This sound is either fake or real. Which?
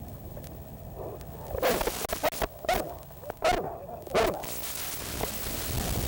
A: real